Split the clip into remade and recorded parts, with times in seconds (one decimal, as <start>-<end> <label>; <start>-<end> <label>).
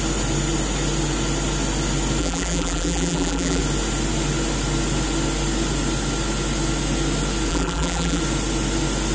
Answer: 0.0-2.2 recorded; 2.2-3.6 remade; 3.6-7.5 recorded; 7.5-8.2 remade; 8.2-9.1 recorded